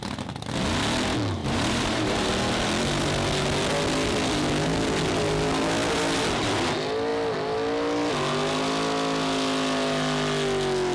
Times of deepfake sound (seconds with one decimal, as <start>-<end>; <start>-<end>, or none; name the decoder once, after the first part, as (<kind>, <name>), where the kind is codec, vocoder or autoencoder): 1.4-2.3 (vocoder, BigVGAN v2)